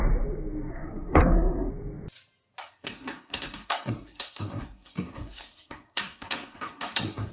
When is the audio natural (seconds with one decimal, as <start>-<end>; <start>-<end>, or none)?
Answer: 0.0-0.7; 1.7-2.6